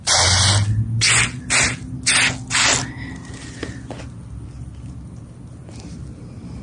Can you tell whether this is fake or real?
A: real